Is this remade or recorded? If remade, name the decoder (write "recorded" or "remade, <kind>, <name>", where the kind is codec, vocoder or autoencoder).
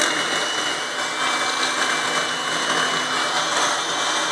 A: recorded